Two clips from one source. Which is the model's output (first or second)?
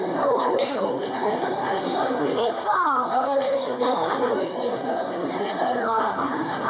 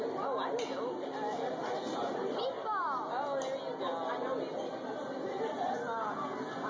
first